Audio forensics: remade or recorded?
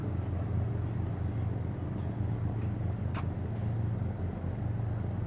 recorded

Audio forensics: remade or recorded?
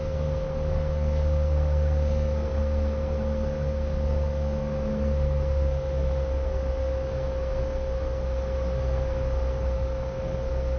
remade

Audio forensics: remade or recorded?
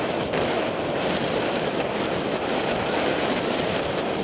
remade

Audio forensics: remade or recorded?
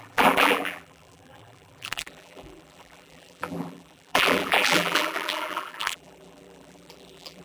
remade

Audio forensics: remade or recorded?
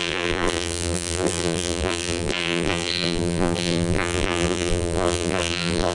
remade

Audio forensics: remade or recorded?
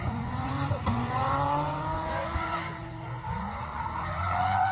remade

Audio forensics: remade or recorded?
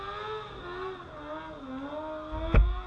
recorded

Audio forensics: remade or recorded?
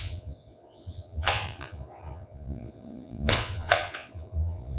remade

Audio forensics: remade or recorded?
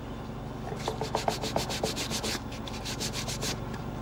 recorded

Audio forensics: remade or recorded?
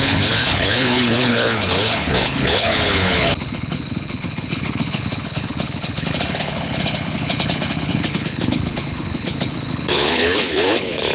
remade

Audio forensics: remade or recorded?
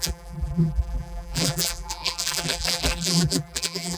remade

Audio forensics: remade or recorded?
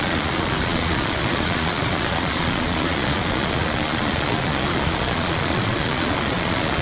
remade